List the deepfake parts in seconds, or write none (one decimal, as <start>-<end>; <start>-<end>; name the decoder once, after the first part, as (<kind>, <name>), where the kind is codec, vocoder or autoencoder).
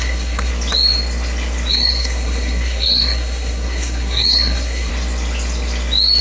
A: 0.0-0.5 (codec, SNAC); 1.7-4.9